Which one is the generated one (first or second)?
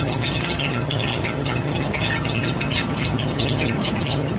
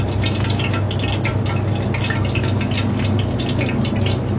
first